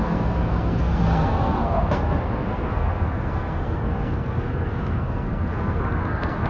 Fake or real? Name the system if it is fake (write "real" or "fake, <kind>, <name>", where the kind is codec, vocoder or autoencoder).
fake, codec, SNAC